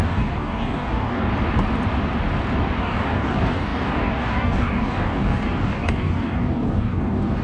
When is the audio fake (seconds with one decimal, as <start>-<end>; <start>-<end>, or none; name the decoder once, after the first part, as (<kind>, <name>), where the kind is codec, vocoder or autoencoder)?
0.0-1.3 (codec, DAC); 2.8-7.4